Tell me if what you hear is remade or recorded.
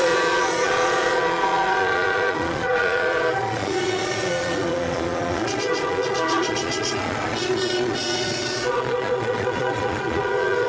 remade